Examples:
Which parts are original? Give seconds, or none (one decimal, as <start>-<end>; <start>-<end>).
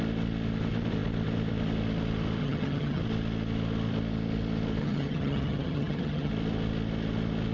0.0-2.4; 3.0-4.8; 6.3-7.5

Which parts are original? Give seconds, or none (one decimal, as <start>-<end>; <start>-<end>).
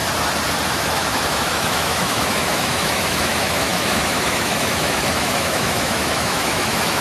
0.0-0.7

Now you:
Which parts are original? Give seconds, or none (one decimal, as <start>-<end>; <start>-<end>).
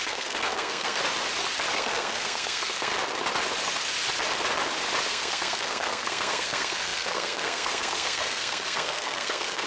1.0-1.7; 2.9-5.1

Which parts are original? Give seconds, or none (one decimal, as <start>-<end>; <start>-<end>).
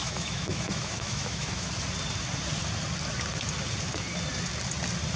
1.7-5.2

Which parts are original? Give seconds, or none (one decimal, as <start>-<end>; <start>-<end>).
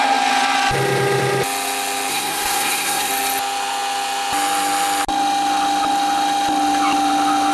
0.0-2.1; 3.1-7.5